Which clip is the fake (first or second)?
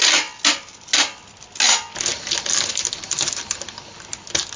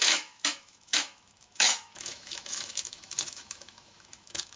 second